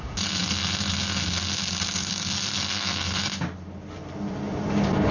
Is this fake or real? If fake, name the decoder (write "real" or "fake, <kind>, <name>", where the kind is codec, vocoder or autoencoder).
real